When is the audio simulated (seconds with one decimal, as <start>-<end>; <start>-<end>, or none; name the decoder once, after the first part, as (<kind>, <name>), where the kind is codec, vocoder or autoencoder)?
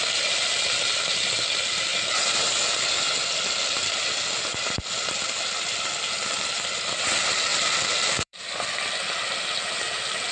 7.5-8.5 (vocoder, BigVGAN v2)